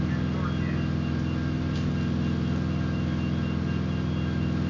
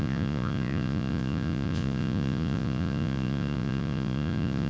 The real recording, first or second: first